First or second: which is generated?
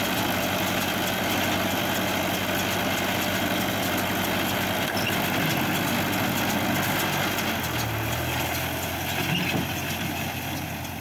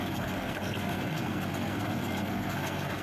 second